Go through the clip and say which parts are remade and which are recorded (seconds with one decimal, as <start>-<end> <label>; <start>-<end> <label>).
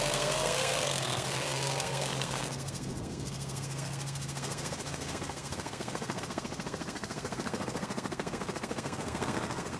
0.0-9.8 remade